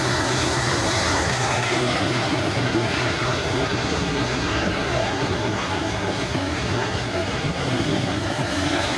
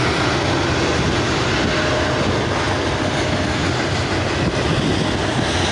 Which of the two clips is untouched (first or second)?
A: second